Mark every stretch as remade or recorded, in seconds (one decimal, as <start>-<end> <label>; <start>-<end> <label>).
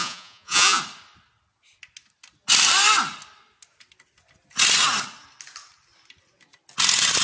0.0-0.8 remade; 0.8-7.2 recorded